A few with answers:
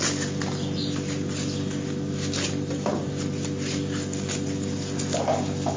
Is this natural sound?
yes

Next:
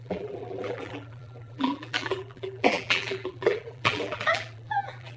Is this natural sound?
no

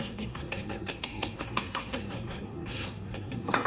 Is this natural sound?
no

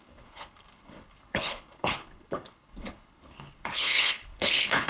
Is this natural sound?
no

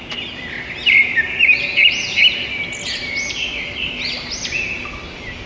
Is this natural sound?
yes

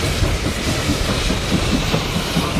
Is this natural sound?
yes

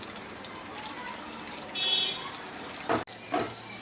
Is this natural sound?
yes